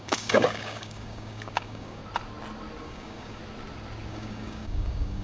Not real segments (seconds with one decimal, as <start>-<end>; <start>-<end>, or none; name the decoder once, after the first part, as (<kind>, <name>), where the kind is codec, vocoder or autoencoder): 0.0-2.0 (codec, DAC); 2.8-3.4; 4.1-5.2